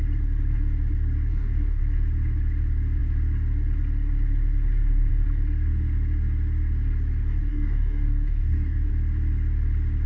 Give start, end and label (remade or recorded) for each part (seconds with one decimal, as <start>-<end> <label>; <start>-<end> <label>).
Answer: 0.0-1.3 recorded; 1.3-1.8 remade; 1.8-7.5 recorded; 7.5-8.9 remade; 8.9-10.1 recorded